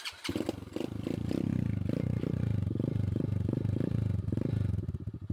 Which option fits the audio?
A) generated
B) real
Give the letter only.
A